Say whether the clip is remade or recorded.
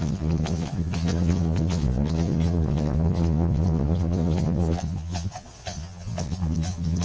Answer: remade